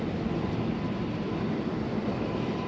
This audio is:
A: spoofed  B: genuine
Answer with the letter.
B